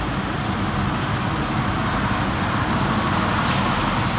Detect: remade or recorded recorded